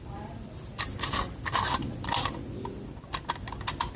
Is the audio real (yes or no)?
yes